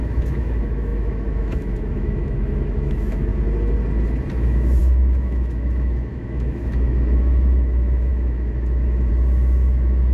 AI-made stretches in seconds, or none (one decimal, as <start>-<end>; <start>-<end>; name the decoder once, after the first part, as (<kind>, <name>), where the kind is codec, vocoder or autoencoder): 0.0-3.3 (autoencoder, DAC-VAE); 4.3-10.1